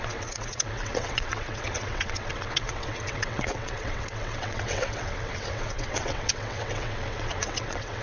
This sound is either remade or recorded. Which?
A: remade